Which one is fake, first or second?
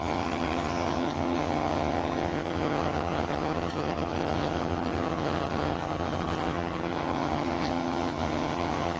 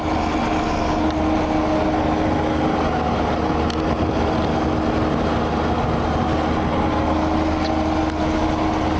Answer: first